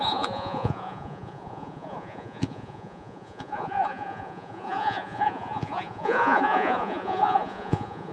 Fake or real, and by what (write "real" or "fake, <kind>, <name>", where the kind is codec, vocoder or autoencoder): fake, vocoder, Vocos